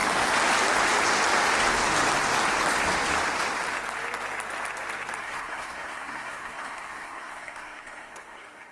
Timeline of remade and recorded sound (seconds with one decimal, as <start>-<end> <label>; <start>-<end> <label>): 0.0-5.2 recorded; 5.2-8.7 remade